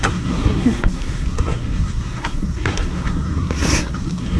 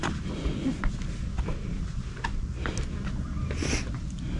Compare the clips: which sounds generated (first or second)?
first